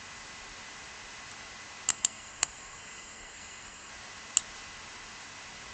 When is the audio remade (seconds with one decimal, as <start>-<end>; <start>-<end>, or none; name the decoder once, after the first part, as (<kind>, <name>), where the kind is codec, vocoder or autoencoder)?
1.9-3.9 (codec, SNAC)